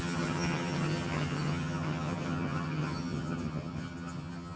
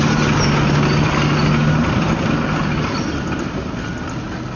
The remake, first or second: first